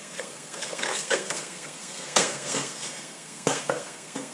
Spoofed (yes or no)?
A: yes